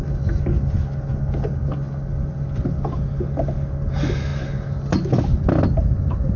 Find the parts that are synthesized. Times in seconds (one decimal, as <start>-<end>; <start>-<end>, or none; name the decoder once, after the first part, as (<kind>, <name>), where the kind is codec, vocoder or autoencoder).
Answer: none